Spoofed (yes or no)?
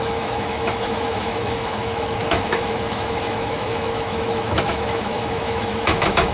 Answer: yes